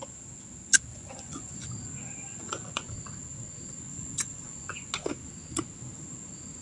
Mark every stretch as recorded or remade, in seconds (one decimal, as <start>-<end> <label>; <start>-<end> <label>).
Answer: 0.0-0.9 recorded; 0.9-1.7 remade; 1.7-2.3 recorded; 2.3-2.9 remade; 2.9-3.9 recorded; 3.9-4.9 remade; 4.9-6.6 recorded